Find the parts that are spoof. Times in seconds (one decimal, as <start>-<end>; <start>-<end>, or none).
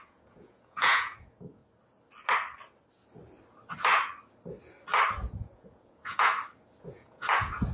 0.0-1.6; 5.1-6.3; 6.8-7.7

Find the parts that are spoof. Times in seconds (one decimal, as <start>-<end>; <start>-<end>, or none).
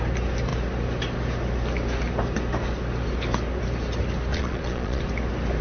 4.3-5.0